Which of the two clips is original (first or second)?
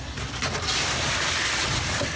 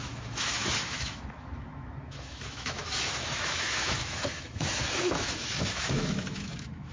first